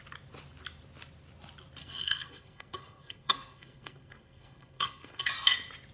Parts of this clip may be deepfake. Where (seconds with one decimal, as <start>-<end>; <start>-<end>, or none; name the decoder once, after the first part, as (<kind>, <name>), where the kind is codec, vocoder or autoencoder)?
1.8-5.3 (codec, SNAC)